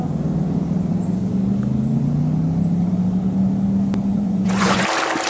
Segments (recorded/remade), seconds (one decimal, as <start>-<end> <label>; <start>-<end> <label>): 0.0-4.1 recorded; 4.1-4.8 remade; 4.8-5.3 recorded